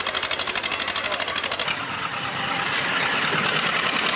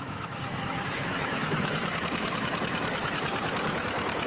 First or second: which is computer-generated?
second